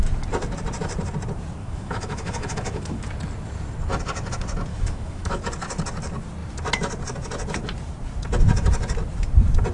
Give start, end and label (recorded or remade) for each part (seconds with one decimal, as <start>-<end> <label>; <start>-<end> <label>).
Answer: 0.0-1.6 recorded; 1.6-3.0 remade; 3.0-4.7 recorded; 4.7-5.4 remade; 5.4-9.7 recorded